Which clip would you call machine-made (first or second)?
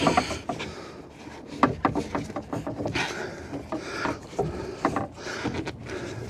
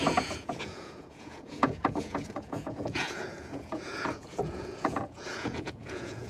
second